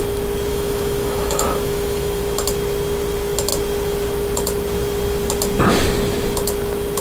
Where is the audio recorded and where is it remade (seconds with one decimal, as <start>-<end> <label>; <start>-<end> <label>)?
0.0-0.5 recorded; 0.5-2.2 remade; 2.2-7.0 recorded

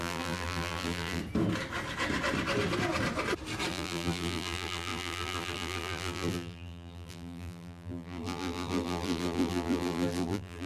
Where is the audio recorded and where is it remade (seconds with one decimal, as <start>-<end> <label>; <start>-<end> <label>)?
0.0-1.2 remade; 1.2-3.7 recorded; 3.7-10.7 remade

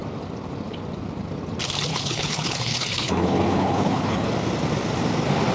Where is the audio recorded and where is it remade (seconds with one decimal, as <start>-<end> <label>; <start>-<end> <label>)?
0.0-1.9 recorded; 1.9-4.3 remade; 4.3-5.5 recorded

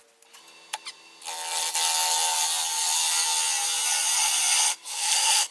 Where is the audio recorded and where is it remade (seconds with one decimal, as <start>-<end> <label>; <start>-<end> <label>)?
0.0-4.7 recorded; 4.7-5.5 remade

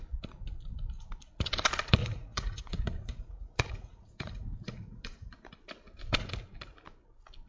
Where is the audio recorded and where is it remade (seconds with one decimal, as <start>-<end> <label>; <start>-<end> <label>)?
0.0-2.0 recorded; 2.0-5.5 remade; 5.5-7.5 recorded

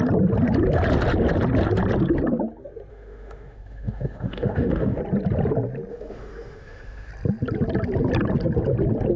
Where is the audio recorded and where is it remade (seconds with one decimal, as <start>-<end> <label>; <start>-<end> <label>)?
0.0-2.9 recorded; 2.9-5.0 remade; 5.0-5.9 recorded; 5.9-7.1 remade; 7.1-9.2 recorded

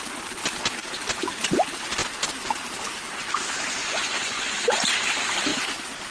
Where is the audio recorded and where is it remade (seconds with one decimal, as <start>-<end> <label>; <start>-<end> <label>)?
0.0-3.8 recorded; 3.8-4.6 remade; 4.6-6.1 recorded